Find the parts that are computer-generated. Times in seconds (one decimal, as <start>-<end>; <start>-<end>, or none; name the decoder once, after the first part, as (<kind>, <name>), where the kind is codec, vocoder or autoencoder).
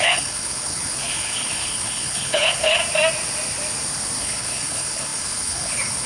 0.0-2.8 (codec, HILCodec); 4.2-6.1